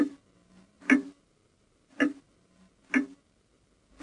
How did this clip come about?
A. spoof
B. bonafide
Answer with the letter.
B